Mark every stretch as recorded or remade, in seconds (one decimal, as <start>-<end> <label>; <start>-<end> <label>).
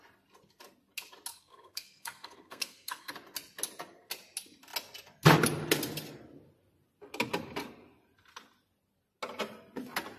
0.0-1.3 recorded; 1.3-3.1 remade; 3.1-10.2 recorded